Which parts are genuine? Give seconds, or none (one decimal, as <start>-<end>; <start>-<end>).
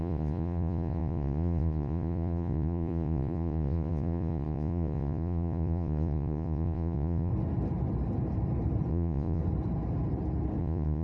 7.3-8.9; 9.4-10.6